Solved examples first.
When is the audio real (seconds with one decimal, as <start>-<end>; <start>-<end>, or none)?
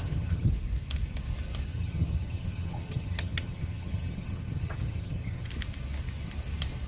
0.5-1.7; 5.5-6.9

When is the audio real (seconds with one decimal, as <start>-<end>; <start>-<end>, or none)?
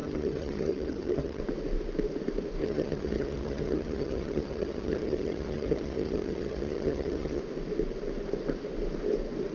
1.4-2.6; 7.4-9.5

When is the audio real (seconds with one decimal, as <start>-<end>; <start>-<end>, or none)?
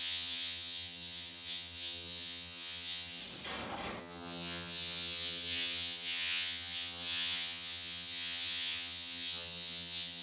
3.2-4.0